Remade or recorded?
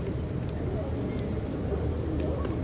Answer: recorded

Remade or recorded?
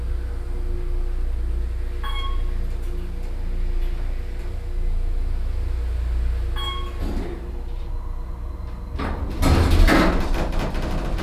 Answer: recorded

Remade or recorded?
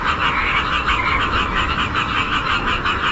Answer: remade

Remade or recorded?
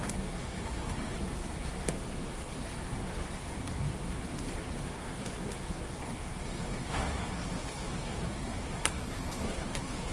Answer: remade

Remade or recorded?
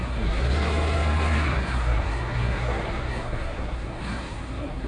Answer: remade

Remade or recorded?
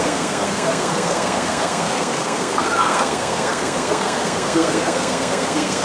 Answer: remade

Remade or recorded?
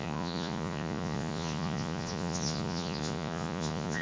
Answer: remade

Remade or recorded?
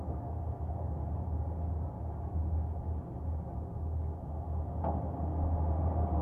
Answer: recorded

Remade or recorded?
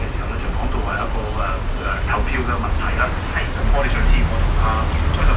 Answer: recorded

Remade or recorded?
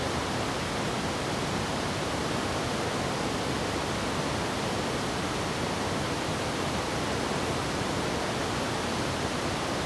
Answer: recorded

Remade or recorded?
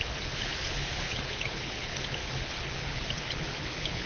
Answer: remade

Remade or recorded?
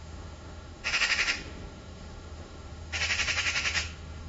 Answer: remade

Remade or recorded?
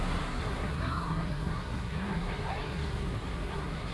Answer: remade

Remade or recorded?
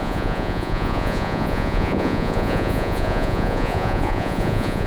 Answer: remade